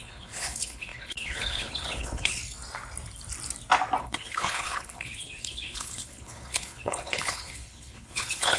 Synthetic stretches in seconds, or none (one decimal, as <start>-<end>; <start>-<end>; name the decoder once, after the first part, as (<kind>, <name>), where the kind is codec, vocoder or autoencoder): 0.0-2.4 (codec, HILCodec); 4.0-8.6